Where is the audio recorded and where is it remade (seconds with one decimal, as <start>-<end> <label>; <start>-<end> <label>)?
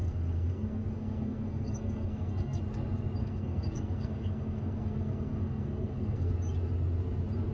0.0-2.6 remade; 2.6-3.2 recorded; 3.2-6.3 remade; 6.3-7.5 recorded